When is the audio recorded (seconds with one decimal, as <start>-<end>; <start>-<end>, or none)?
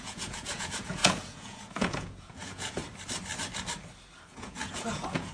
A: 2.8-4.3